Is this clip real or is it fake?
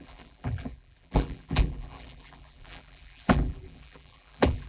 fake